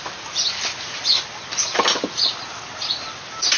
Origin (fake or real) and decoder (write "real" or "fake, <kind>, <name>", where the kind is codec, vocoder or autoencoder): real